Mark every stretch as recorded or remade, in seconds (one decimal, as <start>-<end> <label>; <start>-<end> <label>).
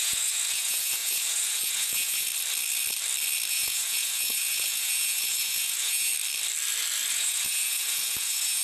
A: 0.0-2.3 remade; 2.3-3.5 recorded; 3.5-6.1 remade; 6.1-7.1 recorded; 7.1-8.6 remade